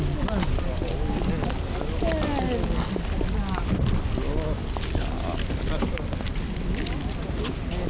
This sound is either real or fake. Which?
real